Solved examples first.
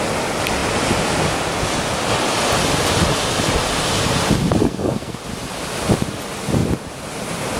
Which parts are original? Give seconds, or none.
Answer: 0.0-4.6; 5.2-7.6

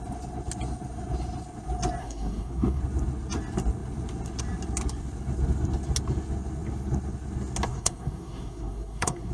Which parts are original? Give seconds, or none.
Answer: 0.0-2.0; 2.8-7.7

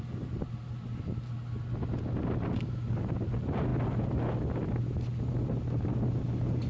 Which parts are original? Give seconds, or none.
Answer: 0.0-6.7

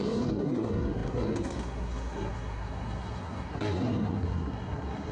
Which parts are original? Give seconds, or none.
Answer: none

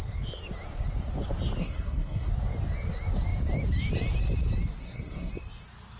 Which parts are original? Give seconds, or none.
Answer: 0.0-1.6; 2.3-4.8; 5.3-6.0